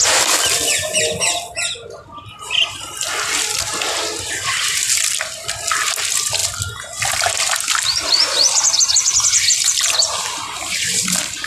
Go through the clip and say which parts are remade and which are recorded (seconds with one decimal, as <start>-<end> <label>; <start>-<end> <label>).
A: 0.0-11.5 recorded